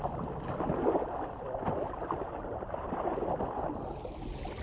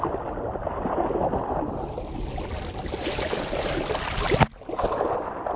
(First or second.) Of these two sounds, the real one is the second